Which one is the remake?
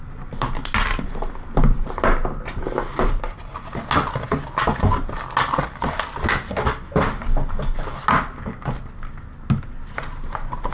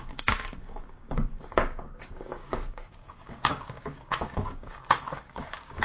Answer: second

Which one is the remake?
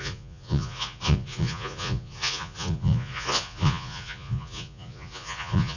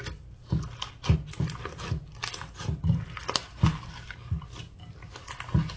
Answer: first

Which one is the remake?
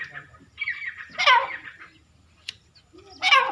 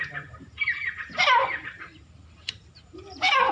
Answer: second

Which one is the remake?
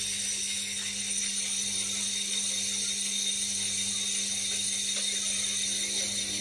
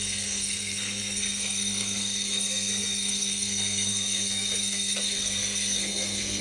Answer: second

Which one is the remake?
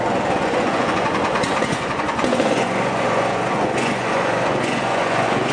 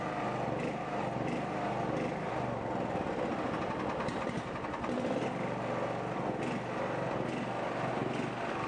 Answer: first